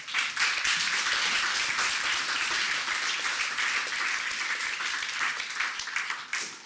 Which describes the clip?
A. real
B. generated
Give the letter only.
A